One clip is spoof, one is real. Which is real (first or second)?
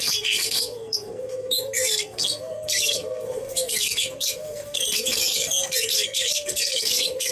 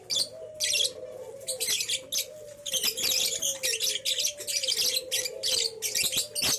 second